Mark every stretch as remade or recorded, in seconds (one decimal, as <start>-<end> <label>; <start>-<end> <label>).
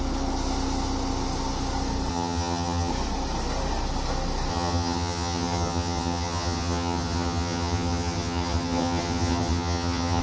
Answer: 0.0-2.1 recorded; 2.1-2.9 remade; 2.9-4.5 recorded; 4.5-10.2 remade